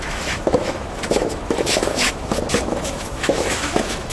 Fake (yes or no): yes